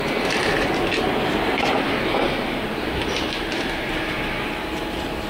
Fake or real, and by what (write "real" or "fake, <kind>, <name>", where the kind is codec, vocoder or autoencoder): fake, vocoder, BigVGAN v2